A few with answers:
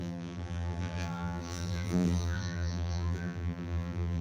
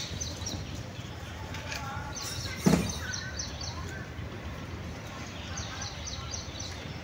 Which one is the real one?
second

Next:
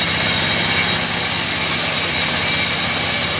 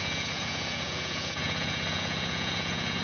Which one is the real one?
first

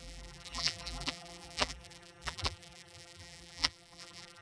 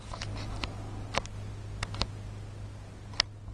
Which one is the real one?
second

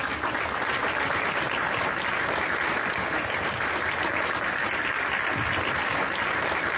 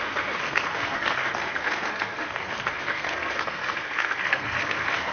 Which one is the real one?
first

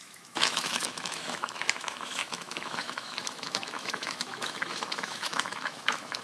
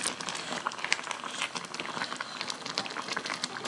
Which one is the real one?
second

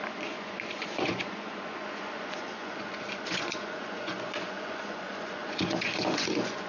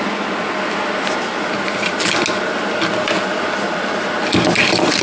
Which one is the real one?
second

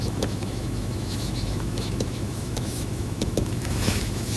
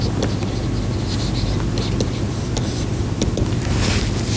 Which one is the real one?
second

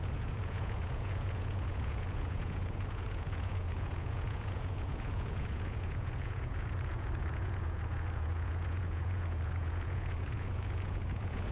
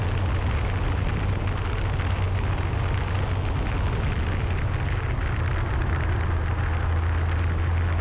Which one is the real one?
second